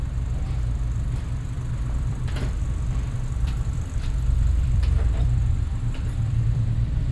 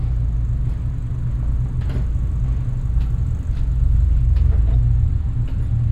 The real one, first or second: second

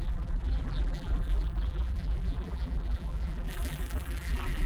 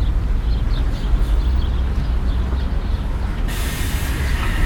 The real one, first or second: second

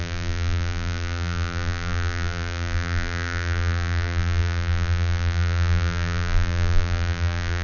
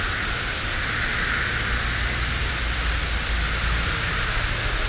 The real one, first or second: second